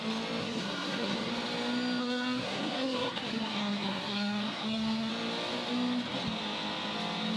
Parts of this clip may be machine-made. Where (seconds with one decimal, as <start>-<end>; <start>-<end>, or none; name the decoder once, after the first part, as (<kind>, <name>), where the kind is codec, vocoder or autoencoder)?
0.4-1.3 (codec, SNAC); 2.0-5.1